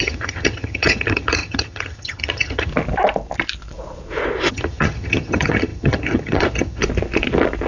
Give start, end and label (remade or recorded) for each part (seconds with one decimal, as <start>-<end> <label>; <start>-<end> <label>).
0.0-2.7 remade; 2.7-4.5 recorded; 4.5-6.8 remade; 6.8-7.7 recorded

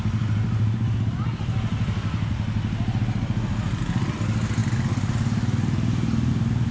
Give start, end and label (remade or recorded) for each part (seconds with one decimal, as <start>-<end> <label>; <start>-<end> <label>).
0.0-6.7 recorded

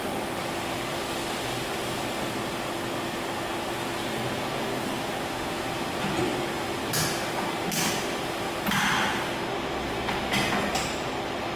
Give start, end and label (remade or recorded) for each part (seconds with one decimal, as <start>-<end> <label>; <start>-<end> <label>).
0.0-11.6 recorded

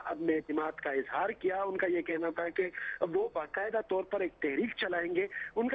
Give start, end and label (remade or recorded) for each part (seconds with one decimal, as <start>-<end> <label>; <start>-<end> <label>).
0.0-0.5 remade; 0.5-2.1 recorded; 2.1-3.7 remade; 3.7-5.7 recorded

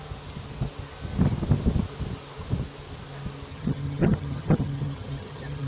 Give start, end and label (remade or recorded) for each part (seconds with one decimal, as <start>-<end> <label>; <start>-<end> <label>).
0.0-3.5 recorded; 3.5-5.7 remade